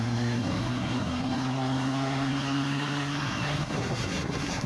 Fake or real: fake